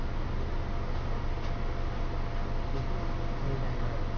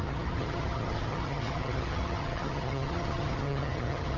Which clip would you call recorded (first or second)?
first